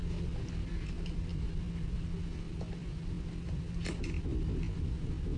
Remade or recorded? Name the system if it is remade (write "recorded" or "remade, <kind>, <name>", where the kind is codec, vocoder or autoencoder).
recorded